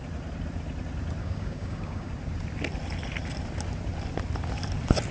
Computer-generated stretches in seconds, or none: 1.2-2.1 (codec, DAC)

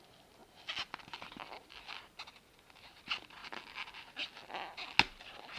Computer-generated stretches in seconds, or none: none

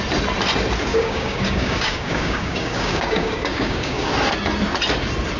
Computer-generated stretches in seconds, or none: 0.9-4.1 (codec, DAC)

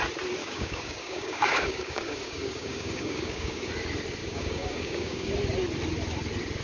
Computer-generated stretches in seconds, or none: 0.4-3.7 (codec, DAC); 4.2-5.3

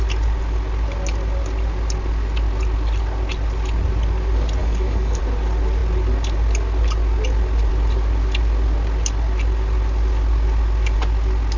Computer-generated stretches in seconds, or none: 4.6-5.2 (codec, DAC)

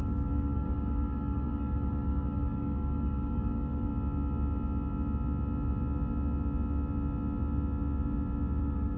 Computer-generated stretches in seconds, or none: 0.0-3.9 (codec, DAC); 8.6-9.0